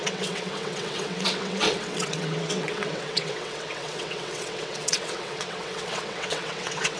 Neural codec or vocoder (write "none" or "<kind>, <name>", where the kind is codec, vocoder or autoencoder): vocoder, WaveNeXt